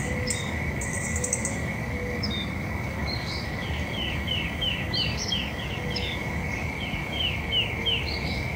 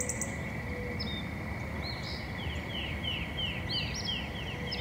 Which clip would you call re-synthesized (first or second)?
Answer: first